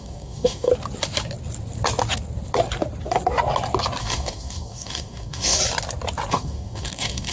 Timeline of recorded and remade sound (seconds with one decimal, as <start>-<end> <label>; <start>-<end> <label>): 0.0-0.7 remade; 0.7-4.0 recorded; 4.0-5.6 remade; 5.6-6.3 recorded; 6.3-7.3 remade